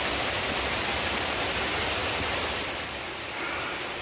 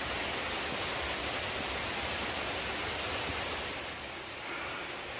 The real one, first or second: second